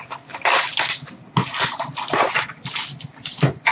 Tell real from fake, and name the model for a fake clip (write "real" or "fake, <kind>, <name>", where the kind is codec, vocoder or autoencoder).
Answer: real